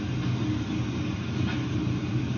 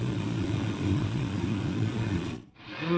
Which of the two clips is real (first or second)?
first